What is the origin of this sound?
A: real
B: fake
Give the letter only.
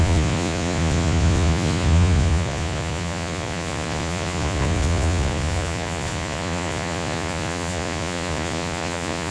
B